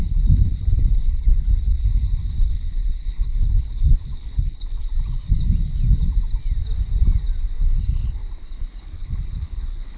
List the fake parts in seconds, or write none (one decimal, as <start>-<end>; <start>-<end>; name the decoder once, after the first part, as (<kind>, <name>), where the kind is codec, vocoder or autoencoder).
0.0-4.8 (codec, HILCodec); 7.8-8.2; 8.8-10.0